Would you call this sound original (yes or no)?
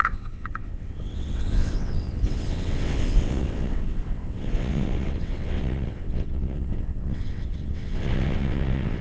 no